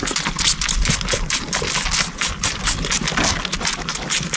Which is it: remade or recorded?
recorded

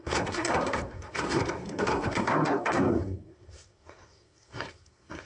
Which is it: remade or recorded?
remade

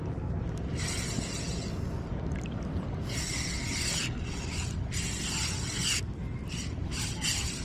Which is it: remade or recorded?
recorded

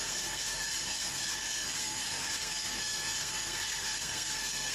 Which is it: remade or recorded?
remade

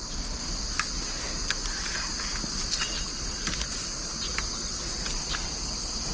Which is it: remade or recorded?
recorded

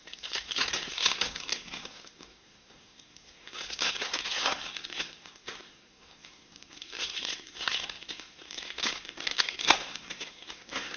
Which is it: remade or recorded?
remade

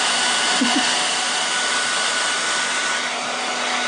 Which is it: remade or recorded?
recorded